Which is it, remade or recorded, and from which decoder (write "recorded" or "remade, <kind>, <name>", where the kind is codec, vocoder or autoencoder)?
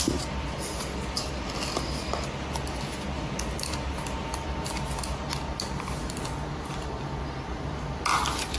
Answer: recorded